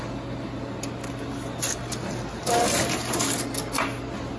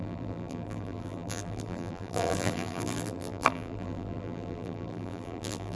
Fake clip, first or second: second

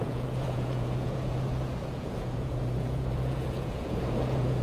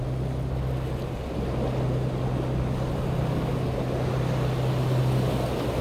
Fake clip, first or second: first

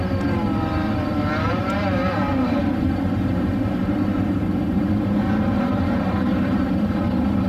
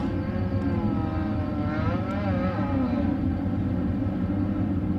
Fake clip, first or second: first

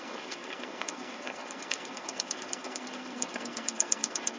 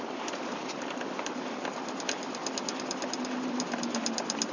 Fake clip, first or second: first